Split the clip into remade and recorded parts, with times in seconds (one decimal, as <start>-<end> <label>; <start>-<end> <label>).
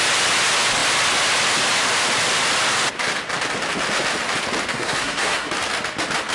0.0-4.7 recorded; 4.7-5.5 remade; 5.5-6.3 recorded